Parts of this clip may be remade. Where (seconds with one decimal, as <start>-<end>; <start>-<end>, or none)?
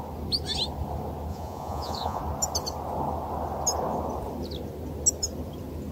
1.3-2.2